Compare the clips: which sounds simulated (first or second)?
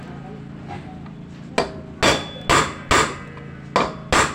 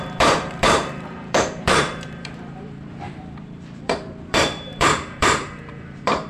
second